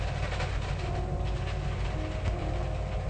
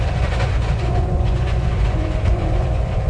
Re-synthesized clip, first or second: second